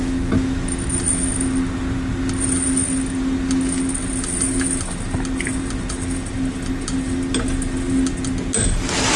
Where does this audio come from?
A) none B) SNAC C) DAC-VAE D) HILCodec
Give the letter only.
A